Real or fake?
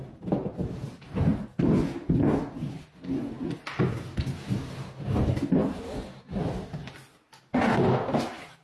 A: real